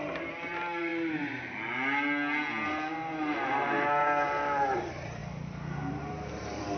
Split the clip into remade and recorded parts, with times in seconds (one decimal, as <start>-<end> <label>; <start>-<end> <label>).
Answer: 0.0-0.9 remade; 0.9-3.6 recorded; 3.6-6.8 remade